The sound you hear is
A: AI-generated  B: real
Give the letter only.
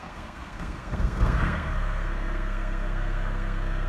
A